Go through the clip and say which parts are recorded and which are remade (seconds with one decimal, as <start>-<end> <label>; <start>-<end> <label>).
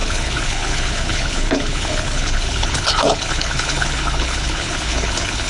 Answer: 0.0-5.5 remade